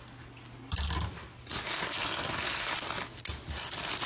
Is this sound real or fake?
real